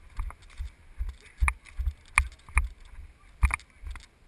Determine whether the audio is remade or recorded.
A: recorded